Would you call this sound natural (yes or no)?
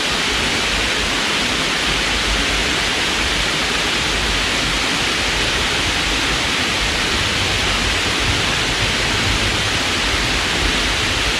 yes